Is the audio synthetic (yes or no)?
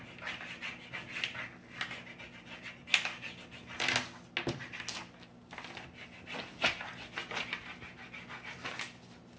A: no